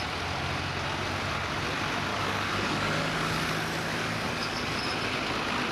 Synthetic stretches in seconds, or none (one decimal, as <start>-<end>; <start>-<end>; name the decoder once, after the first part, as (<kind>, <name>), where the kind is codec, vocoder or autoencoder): 2.1-3.5 (codec, DAC); 3.9-4.8